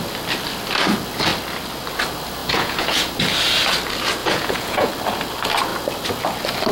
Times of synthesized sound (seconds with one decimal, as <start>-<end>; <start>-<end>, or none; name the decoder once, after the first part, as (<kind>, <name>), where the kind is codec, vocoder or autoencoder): 2.4-3.1 (vocoder, Vocos); 4.2-4.9